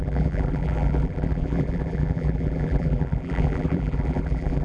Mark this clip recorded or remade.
remade